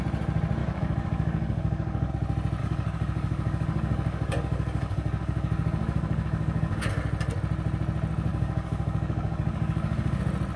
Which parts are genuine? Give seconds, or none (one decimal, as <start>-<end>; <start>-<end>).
0.0-0.6; 2.1-2.6; 6.9-8.3; 10.2-10.6